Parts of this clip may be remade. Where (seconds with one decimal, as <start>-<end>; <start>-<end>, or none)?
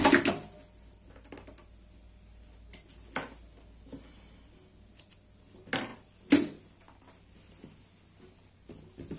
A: none